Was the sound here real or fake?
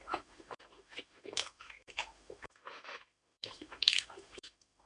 fake